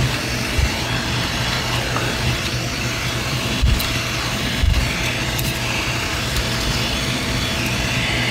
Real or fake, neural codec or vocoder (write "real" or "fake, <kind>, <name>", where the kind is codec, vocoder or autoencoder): real